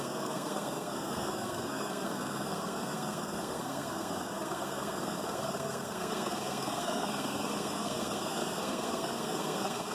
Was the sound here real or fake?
fake